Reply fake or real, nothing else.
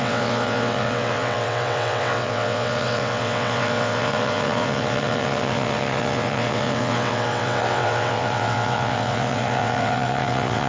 fake